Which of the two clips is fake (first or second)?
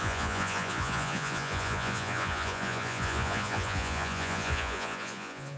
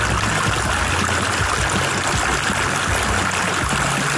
first